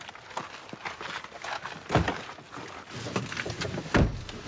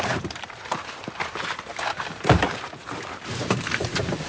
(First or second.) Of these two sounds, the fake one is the second